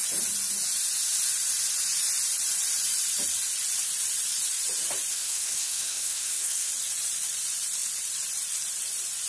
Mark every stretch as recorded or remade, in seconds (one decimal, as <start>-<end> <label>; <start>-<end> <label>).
0.0-5.1 recorded; 5.1-6.7 remade; 6.7-9.3 recorded